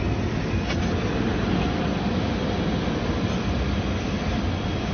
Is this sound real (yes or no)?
yes